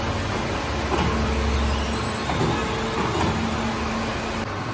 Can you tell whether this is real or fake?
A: real